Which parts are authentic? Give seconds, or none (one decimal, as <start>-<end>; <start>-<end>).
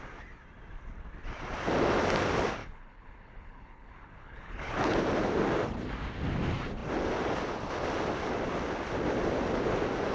0.0-2.6; 5.0-10.1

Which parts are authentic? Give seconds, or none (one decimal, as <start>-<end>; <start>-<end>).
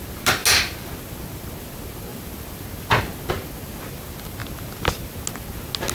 0.0-5.9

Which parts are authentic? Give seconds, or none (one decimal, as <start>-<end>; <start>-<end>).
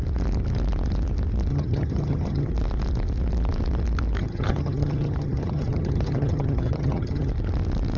0.0-1.5; 2.5-4.2; 7.3-8.0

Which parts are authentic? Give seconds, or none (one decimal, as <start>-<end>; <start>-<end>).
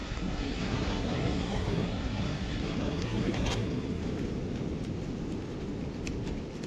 4.0-6.7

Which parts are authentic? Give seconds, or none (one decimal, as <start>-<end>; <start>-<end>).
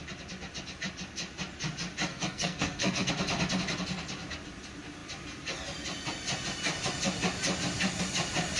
0.0-2.1; 3.1-8.6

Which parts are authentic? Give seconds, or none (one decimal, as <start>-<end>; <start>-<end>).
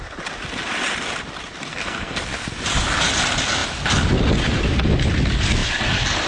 0.0-1.7; 2.2-6.3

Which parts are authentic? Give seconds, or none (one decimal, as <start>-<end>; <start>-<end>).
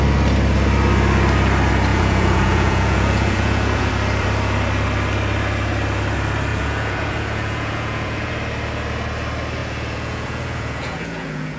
0.0-1.9; 3.9-6.5; 8.3-9.6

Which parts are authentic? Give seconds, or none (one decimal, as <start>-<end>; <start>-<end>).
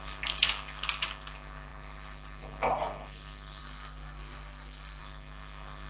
0.0-3.6; 5.0-5.9